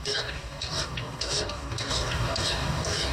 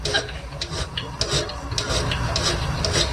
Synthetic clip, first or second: first